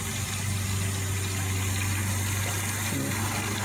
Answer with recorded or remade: recorded